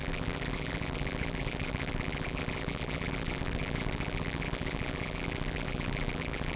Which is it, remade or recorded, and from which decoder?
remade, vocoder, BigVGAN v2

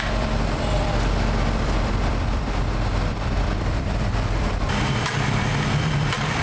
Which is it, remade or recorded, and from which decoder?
remade, vocoder, BigVGAN v2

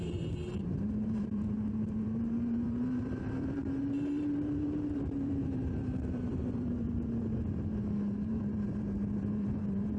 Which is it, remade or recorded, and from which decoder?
remade, vocoder, BigVGAN v2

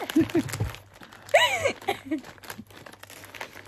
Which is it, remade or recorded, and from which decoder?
recorded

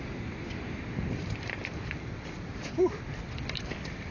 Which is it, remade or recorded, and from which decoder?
remade, vocoder, BigVGAN v2